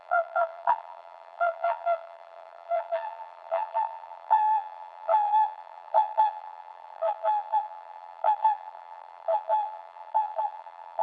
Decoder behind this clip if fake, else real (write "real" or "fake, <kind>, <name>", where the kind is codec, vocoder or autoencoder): fake, vocoder, BigVGAN v2